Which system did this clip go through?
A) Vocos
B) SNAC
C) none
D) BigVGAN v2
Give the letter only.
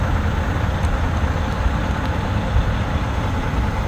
C